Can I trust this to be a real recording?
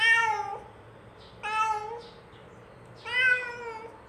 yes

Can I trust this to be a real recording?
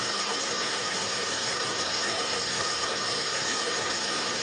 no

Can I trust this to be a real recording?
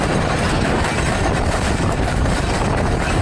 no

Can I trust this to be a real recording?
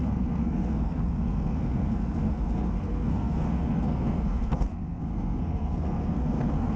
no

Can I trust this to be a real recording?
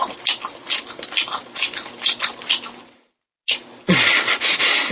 yes